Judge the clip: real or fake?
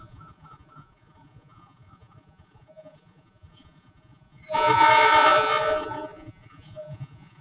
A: fake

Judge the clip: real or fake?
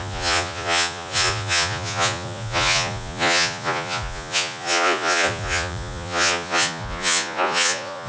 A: fake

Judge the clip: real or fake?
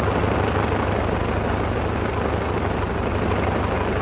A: real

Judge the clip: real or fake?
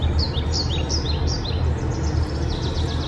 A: real